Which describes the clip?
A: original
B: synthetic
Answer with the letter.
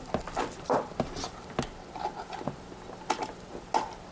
A